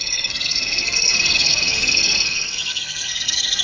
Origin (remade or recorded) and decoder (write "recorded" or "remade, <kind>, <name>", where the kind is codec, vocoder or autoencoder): remade, codec, SNAC